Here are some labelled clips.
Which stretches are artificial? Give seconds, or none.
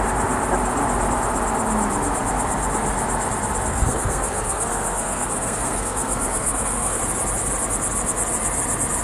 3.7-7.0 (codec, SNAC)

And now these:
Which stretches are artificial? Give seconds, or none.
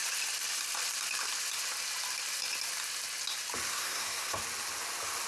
3.7-4.4 (codec, SNAC)